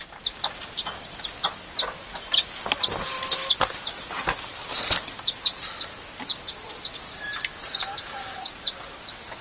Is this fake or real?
real